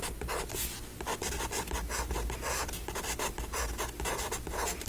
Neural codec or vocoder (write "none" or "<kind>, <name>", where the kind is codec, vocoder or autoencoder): none